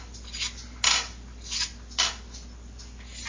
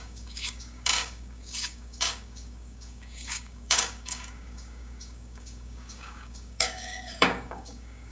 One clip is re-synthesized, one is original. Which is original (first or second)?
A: first